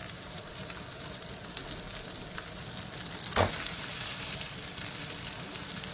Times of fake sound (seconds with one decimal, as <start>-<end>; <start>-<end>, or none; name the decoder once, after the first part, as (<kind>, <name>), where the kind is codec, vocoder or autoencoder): 0.0-1.0 (vocoder, BigVGAN v2); 3.7-4.7